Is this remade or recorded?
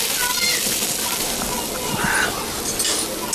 recorded